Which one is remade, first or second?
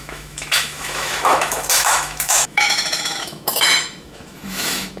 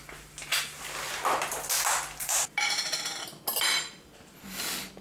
first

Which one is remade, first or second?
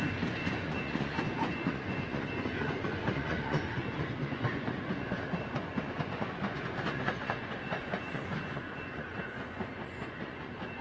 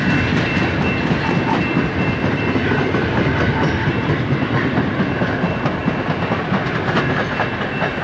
first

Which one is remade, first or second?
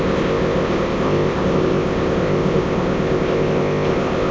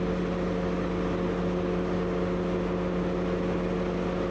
first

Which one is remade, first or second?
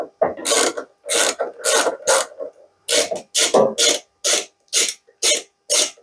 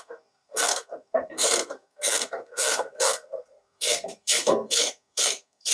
second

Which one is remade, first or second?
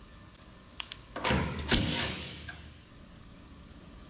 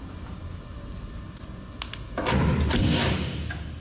first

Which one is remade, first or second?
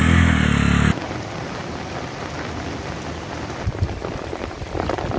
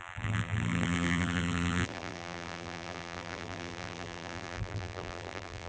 second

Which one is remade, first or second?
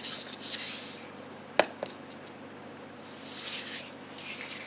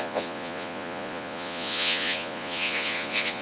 second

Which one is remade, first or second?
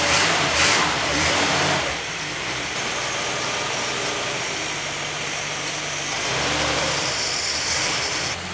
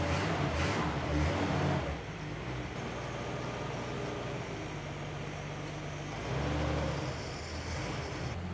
first